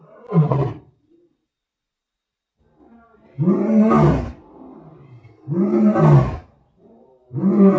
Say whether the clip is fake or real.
real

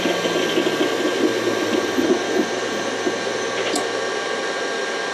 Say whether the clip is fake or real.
real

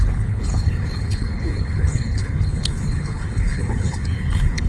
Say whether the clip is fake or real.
fake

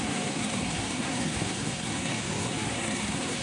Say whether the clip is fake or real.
fake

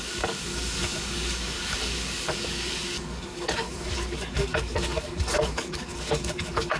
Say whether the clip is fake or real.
fake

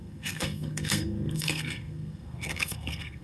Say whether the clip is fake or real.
fake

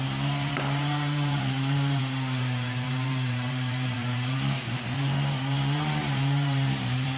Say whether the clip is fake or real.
fake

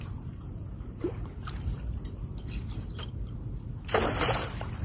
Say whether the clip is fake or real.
fake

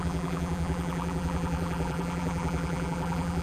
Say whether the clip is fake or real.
fake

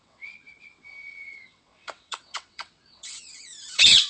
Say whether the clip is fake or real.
fake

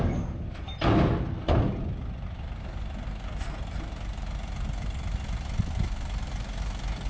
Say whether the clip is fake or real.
real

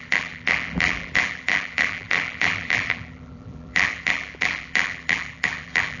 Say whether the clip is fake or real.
fake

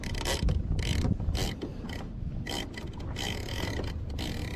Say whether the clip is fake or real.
real